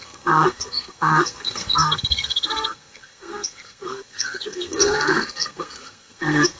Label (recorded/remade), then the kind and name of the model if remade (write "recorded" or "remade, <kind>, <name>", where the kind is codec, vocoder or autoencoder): remade, codec, SNAC